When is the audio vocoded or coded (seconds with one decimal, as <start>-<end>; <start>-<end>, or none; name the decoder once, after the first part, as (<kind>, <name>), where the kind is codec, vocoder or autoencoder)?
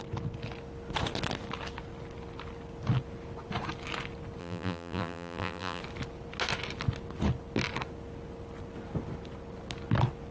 4.4-5.8 (vocoder, BigVGAN v2)